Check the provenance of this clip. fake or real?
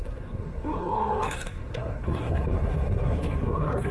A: fake